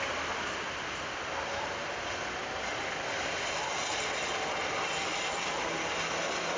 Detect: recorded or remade recorded